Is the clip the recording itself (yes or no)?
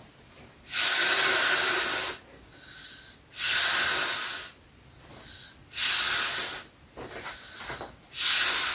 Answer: yes